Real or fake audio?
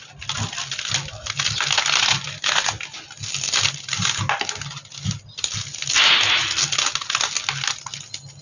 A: real